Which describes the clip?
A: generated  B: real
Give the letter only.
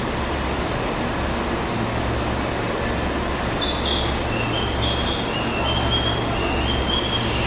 B